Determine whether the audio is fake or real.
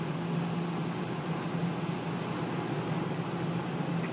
real